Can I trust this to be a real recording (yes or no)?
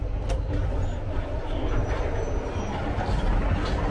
yes